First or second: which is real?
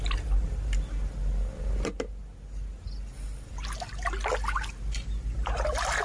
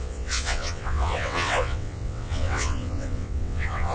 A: first